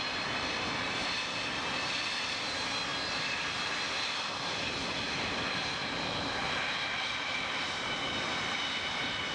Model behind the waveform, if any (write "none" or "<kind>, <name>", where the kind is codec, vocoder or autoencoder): vocoder, BigVGAN v2